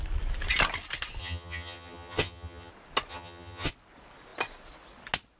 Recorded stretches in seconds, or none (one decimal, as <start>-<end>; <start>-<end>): 0.0-1.2; 2.7-3.1; 3.7-5.4